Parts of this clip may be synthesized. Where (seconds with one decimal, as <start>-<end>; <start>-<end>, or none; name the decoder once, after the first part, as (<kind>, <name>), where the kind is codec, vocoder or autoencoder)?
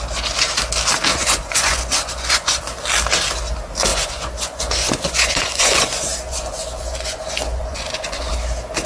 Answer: 1.1-2.6 (vocoder, Vocos); 3.9-8.3